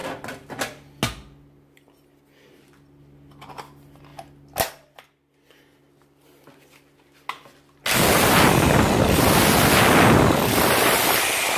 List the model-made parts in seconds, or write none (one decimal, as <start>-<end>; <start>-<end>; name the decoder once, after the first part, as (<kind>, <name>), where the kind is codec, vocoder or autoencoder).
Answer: none